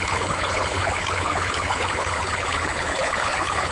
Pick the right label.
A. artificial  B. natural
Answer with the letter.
A